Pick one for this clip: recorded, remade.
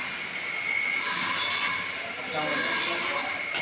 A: recorded